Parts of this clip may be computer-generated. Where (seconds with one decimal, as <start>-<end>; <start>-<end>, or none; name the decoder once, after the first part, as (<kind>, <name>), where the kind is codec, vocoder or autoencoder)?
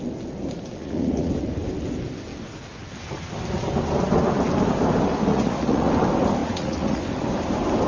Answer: 0.8-1.3 (vocoder, Vocos); 5.3-5.9; 6.4-7.0